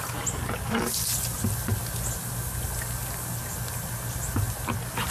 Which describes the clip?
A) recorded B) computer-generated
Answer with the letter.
A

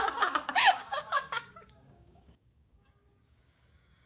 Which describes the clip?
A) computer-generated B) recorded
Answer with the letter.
A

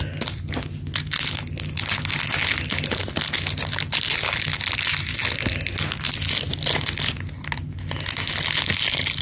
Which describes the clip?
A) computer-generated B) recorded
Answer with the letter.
B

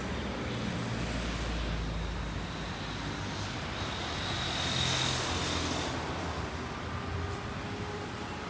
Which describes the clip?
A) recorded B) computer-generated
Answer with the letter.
A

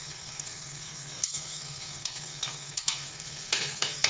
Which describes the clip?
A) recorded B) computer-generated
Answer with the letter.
B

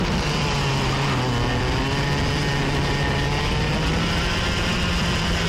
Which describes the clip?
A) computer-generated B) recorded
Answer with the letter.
B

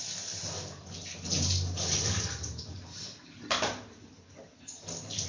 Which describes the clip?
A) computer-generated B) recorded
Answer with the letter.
B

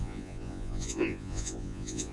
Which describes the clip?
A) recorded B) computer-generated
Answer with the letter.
B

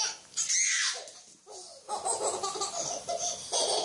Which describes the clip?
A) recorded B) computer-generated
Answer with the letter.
A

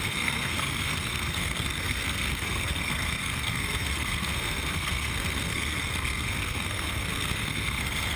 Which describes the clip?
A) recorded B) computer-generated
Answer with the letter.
B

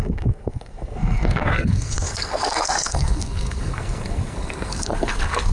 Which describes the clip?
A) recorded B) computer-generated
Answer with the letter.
B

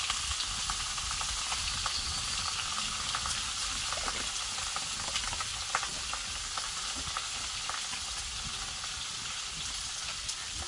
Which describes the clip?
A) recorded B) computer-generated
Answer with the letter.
A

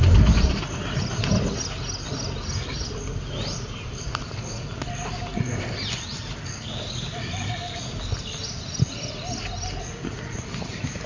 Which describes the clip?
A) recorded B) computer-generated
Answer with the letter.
A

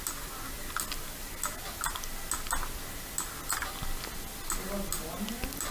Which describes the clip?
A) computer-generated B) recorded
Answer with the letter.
B